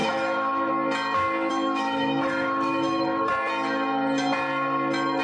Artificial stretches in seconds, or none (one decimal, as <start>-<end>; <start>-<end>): 0.0-0.7; 1.5-3.3